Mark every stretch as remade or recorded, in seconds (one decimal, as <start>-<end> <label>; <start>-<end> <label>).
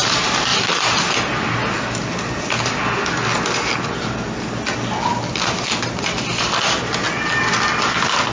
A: 0.0-0.5 recorded; 0.5-1.1 remade; 1.1-8.3 recorded